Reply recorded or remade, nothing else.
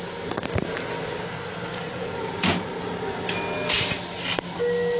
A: recorded